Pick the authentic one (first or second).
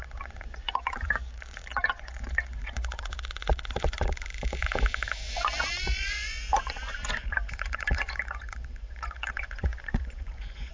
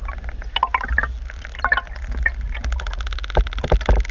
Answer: second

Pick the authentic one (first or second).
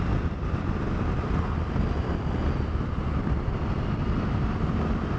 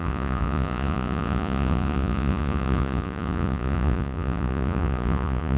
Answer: first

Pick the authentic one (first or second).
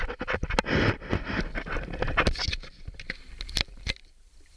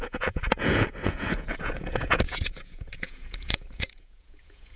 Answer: first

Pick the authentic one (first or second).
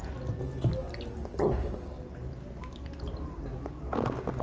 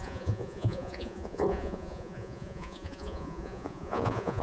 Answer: first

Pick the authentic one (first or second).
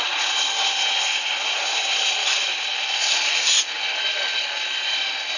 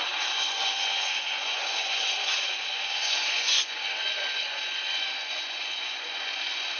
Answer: first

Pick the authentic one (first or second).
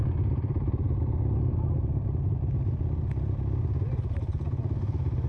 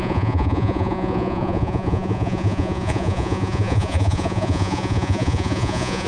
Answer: first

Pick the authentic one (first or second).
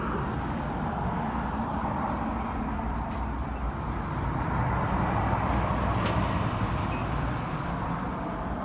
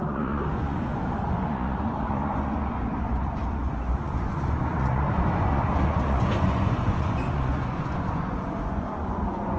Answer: first